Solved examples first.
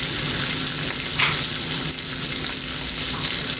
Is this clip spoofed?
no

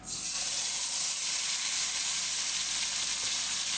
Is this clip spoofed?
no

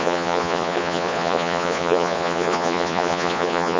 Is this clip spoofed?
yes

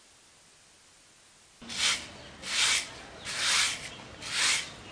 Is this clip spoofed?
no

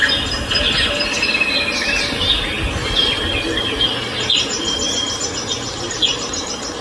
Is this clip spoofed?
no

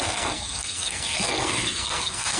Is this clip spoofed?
yes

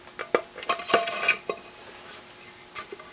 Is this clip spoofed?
no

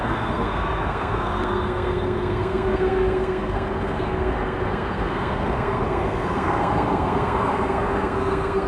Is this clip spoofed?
yes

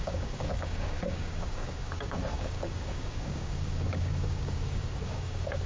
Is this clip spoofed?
yes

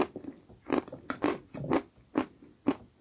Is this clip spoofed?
no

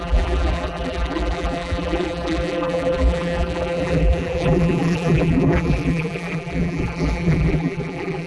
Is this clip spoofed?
yes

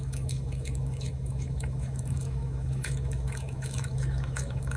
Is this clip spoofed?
yes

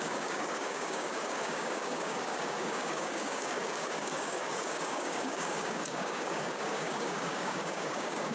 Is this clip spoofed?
yes